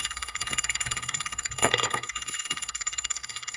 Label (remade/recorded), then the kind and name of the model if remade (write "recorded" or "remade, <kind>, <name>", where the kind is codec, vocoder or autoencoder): remade, codec, SNAC